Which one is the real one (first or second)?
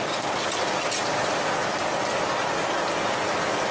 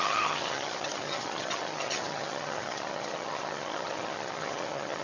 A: first